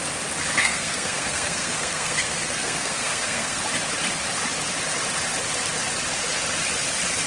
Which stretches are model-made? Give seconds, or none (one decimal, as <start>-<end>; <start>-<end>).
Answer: 0.6-3.6